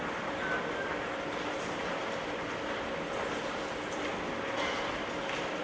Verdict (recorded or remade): recorded